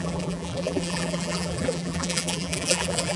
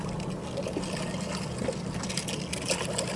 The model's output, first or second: first